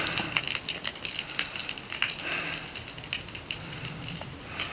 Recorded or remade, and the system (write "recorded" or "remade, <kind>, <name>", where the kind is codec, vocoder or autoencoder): recorded